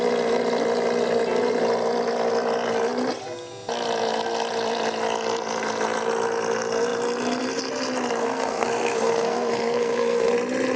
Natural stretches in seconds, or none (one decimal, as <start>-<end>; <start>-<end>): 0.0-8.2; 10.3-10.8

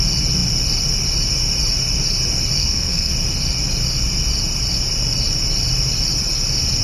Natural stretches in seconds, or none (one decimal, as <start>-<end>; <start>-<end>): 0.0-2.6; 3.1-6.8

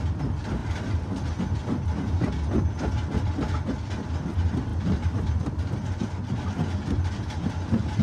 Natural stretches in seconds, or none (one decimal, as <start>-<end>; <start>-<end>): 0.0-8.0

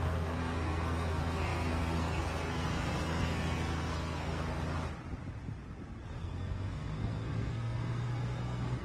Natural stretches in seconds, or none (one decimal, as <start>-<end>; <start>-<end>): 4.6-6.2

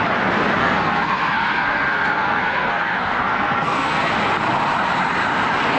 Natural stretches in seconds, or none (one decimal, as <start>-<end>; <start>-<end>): 0.0-0.6; 4.1-5.8